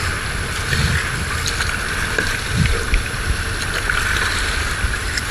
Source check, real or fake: real